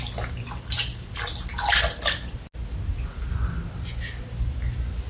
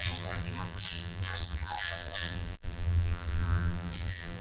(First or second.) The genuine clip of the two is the first